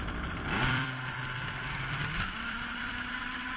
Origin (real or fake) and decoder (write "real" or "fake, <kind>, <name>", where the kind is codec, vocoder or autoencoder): fake, vocoder, BigVGAN v2